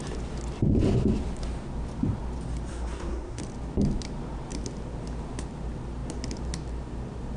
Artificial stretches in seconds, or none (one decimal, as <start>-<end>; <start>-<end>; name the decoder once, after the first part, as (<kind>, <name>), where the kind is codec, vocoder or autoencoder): 2.7-3.4 (codec, SNAC)